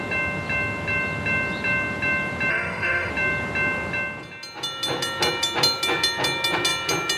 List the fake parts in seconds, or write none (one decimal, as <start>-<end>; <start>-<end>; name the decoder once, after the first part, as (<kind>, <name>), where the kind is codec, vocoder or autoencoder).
2.5-3.1 (autoencoder, DAC-VAE)